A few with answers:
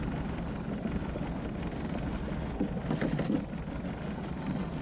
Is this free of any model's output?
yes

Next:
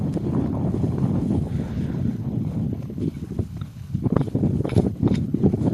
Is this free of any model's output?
no